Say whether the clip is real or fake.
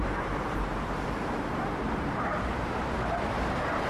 fake